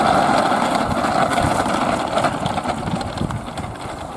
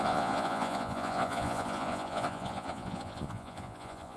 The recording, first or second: first